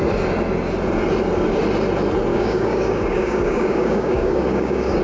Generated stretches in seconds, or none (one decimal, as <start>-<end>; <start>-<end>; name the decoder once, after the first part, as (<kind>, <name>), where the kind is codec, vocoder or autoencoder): 2.3-5.0 (codec, DAC)